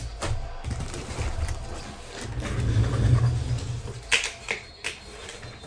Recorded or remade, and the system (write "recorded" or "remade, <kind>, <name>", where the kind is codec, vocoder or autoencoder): recorded